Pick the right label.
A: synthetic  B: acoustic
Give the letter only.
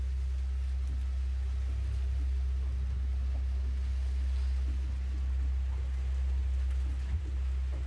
B